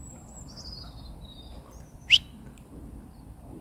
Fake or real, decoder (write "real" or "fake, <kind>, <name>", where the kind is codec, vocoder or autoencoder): real